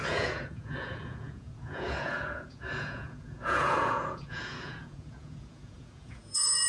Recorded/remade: remade